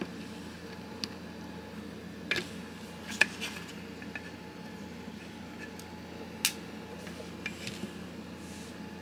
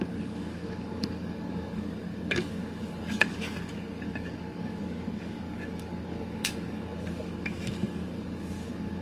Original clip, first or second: first